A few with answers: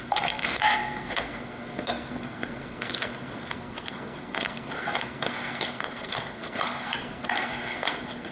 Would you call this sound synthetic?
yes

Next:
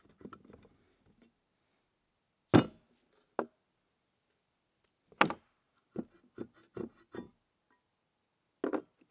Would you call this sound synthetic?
no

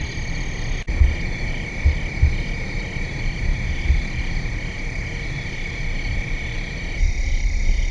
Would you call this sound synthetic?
no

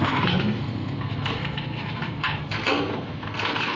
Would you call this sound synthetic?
yes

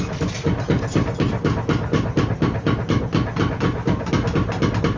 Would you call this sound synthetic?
no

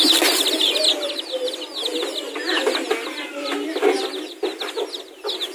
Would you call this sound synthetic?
no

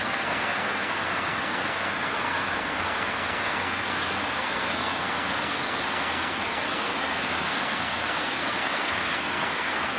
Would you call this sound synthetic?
yes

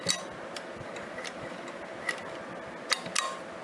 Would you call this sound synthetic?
no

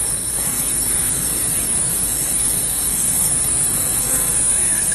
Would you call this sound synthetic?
yes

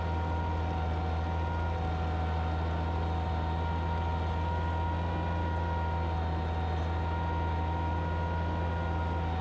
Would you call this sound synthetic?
no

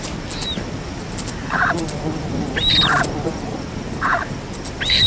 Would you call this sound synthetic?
no